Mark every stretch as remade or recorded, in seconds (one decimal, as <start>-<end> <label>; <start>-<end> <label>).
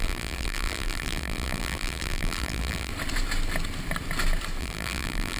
0.0-2.9 remade; 2.9-4.6 recorded; 4.6-5.4 remade